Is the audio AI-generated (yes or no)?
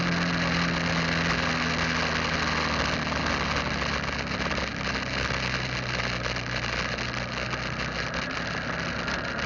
no